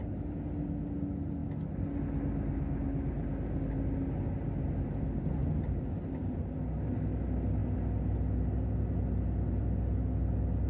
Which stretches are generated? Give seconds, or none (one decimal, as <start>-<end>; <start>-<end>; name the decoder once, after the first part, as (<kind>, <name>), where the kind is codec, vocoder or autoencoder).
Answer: none